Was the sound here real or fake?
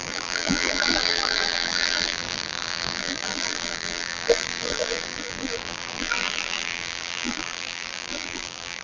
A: fake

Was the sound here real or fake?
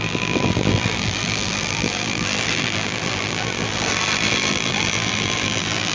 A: fake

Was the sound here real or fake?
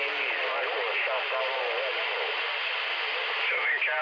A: real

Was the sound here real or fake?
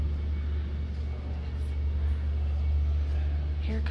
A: real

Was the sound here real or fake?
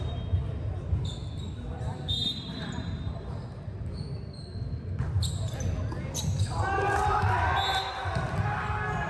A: real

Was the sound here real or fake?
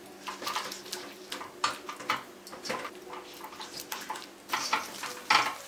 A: real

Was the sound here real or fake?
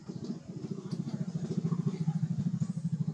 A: fake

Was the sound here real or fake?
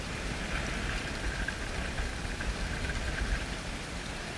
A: fake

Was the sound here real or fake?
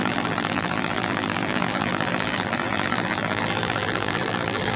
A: fake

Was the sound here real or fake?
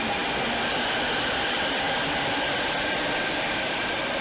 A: fake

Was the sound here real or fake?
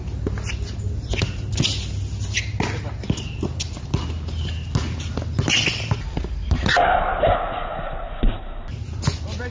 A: real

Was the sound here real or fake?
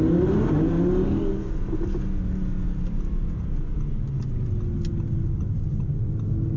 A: real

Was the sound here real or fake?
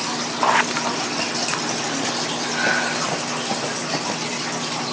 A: real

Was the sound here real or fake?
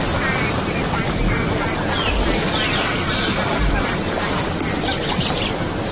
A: fake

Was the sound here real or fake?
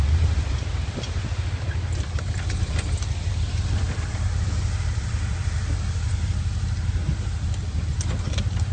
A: fake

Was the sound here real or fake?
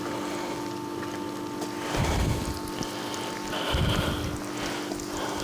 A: real